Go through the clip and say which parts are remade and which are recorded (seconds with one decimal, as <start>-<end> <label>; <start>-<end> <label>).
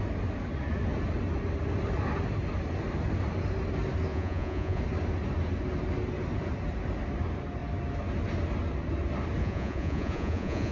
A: 0.0-4.1 recorded; 4.1-4.8 remade; 4.8-9.4 recorded; 9.4-10.7 remade